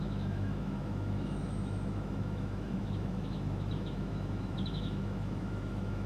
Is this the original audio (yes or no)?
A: no